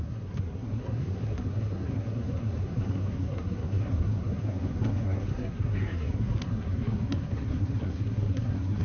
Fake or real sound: fake